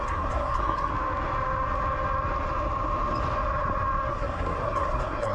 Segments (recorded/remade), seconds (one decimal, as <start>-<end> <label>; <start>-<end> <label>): 0.0-0.9 remade; 0.9-4.1 recorded; 4.1-5.3 remade

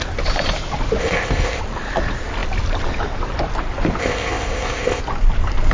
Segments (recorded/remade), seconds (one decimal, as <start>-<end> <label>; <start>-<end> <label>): 0.0-1.0 recorded; 1.0-1.6 remade; 1.6-4.0 recorded; 4.0-5.0 remade; 5.0-5.7 recorded

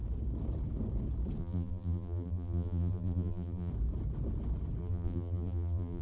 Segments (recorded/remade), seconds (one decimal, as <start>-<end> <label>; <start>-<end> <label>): 0.0-1.4 recorded; 1.4-3.7 remade; 3.7-4.8 recorded; 4.8-6.0 remade

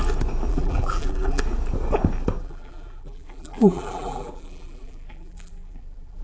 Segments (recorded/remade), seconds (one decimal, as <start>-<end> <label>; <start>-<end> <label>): 0.0-0.5 recorded; 0.5-1.4 remade; 1.4-2.4 recorded; 2.4-6.2 remade